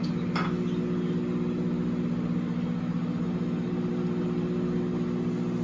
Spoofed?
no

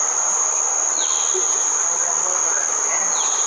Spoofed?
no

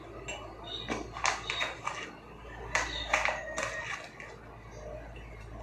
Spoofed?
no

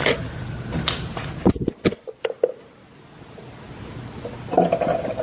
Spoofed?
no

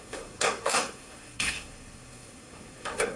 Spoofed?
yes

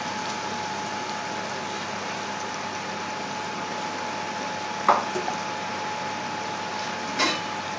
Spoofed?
no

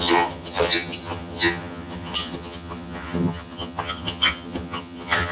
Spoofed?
yes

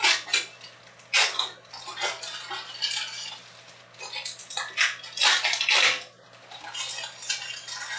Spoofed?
no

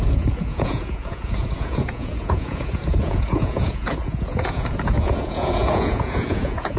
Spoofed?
yes